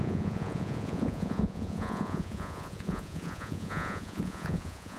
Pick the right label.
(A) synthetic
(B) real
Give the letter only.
A